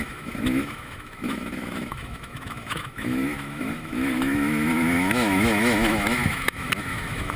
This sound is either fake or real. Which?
fake